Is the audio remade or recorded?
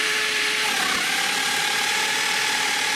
remade